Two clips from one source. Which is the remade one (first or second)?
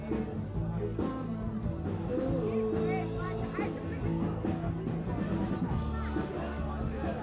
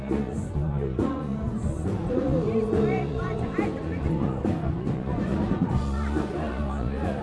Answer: second